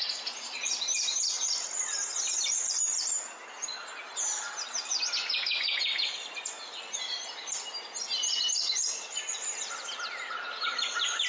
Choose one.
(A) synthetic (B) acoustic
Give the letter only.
B